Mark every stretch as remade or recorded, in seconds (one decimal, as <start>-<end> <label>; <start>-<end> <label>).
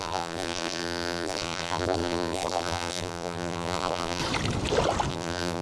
0.0-4.2 remade; 4.2-5.1 recorded; 5.1-5.6 remade